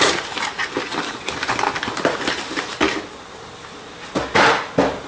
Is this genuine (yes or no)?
yes